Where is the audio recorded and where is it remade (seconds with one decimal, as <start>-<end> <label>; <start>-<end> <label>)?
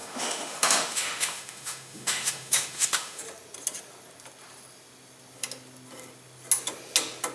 0.0-3.2 remade; 3.2-7.3 recorded